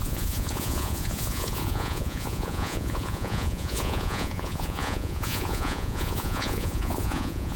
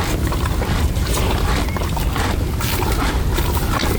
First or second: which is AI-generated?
first